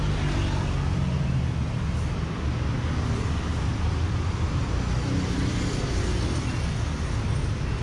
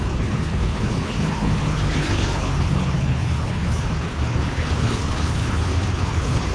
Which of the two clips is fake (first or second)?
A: second